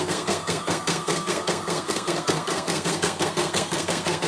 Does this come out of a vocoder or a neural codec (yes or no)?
yes